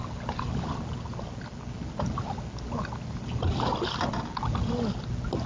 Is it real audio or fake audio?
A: real